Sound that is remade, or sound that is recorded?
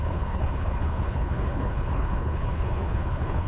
remade